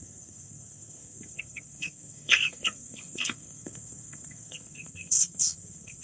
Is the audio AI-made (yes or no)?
yes